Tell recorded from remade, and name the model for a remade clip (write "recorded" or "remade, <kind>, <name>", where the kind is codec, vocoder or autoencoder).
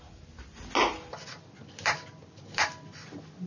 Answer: recorded